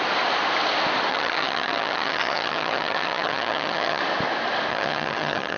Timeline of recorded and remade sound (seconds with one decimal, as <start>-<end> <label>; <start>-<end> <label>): 0.0-1.1 recorded; 1.1-4.0 remade; 4.0-4.7 recorded; 4.7-5.6 remade